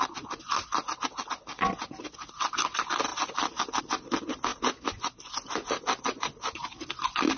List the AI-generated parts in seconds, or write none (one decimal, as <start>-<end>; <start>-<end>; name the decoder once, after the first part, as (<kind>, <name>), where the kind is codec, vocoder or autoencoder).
none